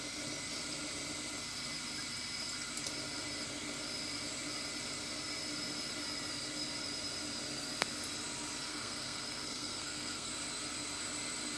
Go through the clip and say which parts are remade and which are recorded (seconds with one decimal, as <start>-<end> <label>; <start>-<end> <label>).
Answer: 0.0-8.7 recorded; 8.7-10.3 remade; 10.3-11.6 recorded